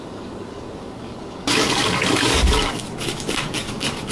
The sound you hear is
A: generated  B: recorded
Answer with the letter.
A